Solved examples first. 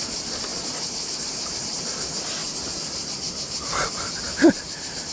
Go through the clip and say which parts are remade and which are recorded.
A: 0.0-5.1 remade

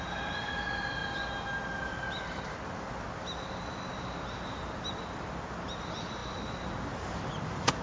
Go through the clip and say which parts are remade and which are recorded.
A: 0.0-7.8 recorded

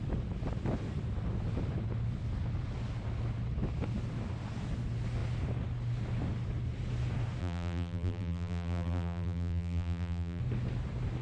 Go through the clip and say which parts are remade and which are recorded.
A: 0.0-7.4 recorded; 7.4-10.4 remade; 10.4-11.2 recorded

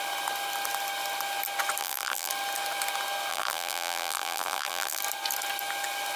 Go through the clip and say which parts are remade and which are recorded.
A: 0.0-1.8 recorded; 1.8-2.3 remade; 2.3-3.3 recorded; 3.3-5.0 remade; 5.0-6.2 recorded

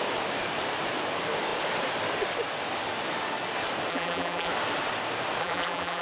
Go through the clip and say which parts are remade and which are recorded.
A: 0.0-3.9 recorded; 3.9-4.5 remade; 4.5-5.4 recorded; 5.4-6.0 remade

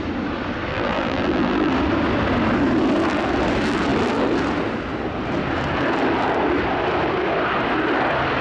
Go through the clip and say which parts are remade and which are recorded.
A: 0.0-0.7 recorded; 0.7-1.7 remade; 1.7-8.4 recorded

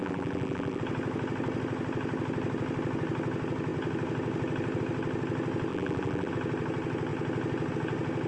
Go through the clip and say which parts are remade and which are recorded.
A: 0.0-0.8 remade; 0.8-5.7 recorded; 5.7-6.3 remade; 6.3-8.3 recorded

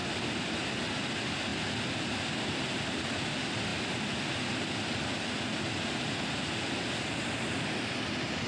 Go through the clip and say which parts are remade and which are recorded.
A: 0.0-8.5 recorded